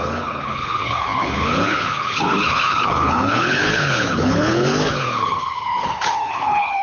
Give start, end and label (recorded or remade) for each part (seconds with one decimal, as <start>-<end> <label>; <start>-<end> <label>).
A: 0.0-6.8 remade